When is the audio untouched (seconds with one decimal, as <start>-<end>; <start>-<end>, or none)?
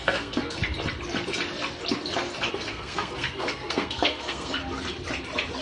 0.6-2.5; 4.6-5.6